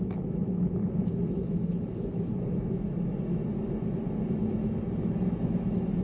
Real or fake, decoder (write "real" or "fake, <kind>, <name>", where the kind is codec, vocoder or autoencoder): fake, autoencoder, DAC-VAE